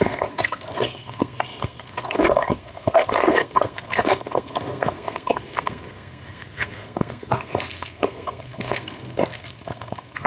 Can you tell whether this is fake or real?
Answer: fake